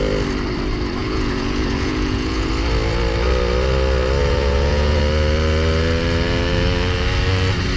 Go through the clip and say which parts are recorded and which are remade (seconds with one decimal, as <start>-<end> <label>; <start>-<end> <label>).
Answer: 0.0-1.0 recorded; 1.0-2.5 remade; 2.5-4.2 recorded; 4.2-5.0 remade; 5.0-7.8 recorded